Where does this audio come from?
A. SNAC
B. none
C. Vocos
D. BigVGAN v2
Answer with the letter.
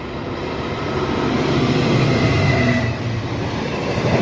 D